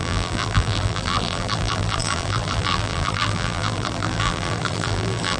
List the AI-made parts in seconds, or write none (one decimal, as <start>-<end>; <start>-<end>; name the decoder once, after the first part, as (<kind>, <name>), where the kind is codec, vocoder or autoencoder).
0.0-5.4 (vocoder, BigVGAN v2)